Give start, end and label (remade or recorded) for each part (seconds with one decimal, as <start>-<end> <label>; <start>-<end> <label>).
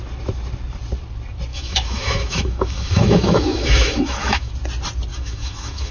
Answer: 0.0-1.5 recorded; 1.5-4.5 remade; 4.5-5.1 recorded; 5.1-5.9 remade